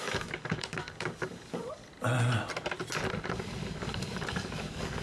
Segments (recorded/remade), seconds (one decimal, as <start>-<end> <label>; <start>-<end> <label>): 0.0-1.8 remade; 1.8-3.3 recorded; 3.3-5.0 remade